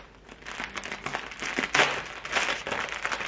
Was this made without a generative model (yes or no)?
yes